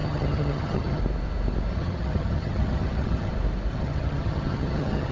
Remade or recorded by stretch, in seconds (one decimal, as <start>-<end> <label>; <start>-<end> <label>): 0.0-1.0 remade; 1.0-1.7 recorded; 1.7-3.3 remade; 3.3-3.7 recorded; 3.7-5.1 remade